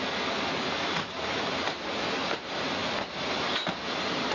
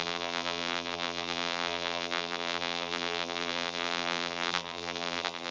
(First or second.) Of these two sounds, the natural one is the first